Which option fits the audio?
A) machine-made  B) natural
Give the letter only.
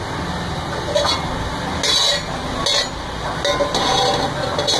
B